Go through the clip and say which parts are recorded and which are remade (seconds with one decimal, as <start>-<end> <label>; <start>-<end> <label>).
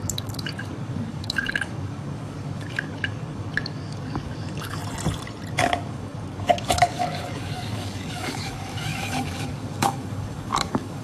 0.0-4.8 remade; 4.8-5.5 recorded; 5.5-11.0 remade